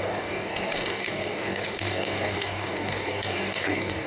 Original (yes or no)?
no